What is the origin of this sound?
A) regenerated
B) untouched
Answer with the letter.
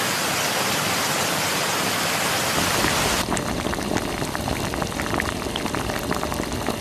A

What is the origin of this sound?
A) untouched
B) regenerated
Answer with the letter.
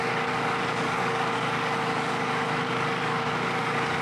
B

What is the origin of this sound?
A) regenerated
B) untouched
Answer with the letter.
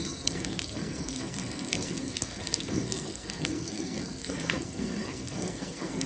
A